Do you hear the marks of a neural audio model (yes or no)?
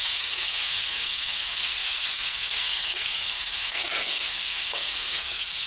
yes